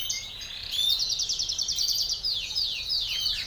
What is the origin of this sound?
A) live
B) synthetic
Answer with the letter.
B